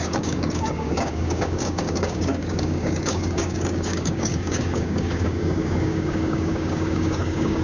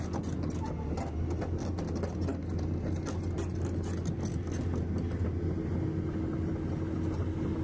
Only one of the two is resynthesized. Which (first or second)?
first